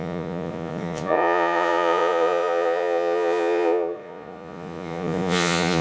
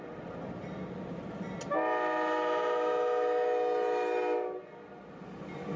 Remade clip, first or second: first